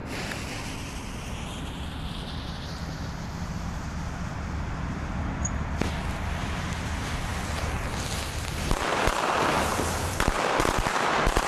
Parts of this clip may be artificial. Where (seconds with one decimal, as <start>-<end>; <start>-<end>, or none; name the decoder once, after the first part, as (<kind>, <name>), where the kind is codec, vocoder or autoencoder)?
none